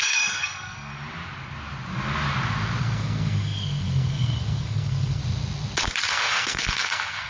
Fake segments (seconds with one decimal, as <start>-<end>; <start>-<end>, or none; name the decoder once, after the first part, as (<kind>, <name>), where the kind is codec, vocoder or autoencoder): 0.0-0.9 (codec, SNAC); 2.8-5.2; 6.1-7.3